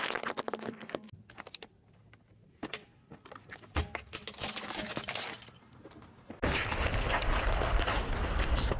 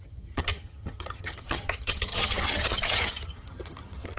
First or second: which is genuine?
first